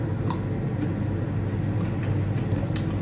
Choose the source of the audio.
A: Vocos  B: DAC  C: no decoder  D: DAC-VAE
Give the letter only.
C